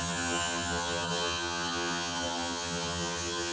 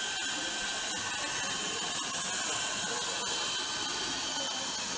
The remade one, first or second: first